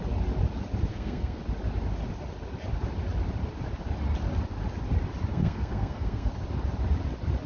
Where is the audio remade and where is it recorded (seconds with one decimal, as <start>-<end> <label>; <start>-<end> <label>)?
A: 0.0-0.9 recorded; 0.9-1.4 remade; 1.4-5.3 recorded; 5.3-6.3 remade; 6.3-7.5 recorded